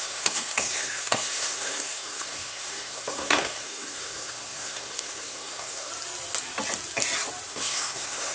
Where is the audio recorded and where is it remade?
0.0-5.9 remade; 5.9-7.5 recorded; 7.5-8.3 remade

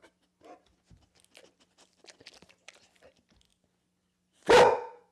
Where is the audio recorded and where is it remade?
0.0-5.1 recorded

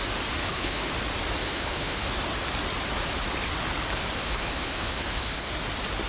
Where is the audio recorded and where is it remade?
0.0-0.4 recorded; 0.4-0.9 remade; 0.9-1.4 recorded; 1.4-2.1 remade; 2.1-4.2 recorded; 4.2-5.5 remade; 5.5-6.1 recorded

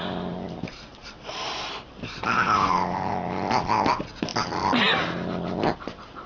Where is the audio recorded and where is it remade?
0.0-0.9 recorded; 0.9-3.1 remade; 3.1-6.3 recorded

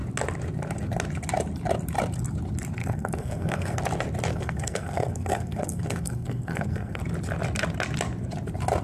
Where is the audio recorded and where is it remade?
0.0-2.8 recorded; 2.8-3.8 remade; 3.8-4.3 recorded; 4.3-7.0 remade; 7.0-8.8 recorded

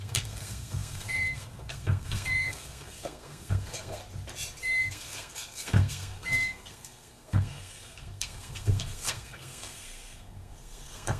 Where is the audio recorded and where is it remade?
0.0-4.0 remade; 4.0-4.6 recorded; 4.6-11.2 remade